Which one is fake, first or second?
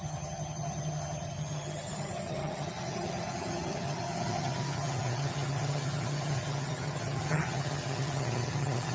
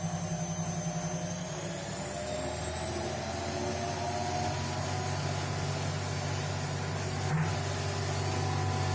first